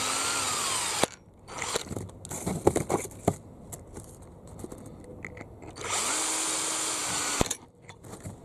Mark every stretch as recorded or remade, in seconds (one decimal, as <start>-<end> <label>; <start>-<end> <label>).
0.0-8.4 recorded